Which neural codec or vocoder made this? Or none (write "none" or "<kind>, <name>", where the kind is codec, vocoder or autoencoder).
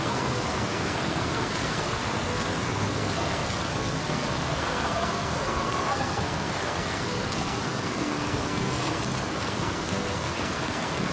codec, SNAC